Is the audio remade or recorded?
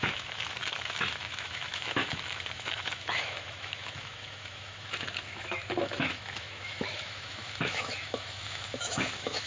remade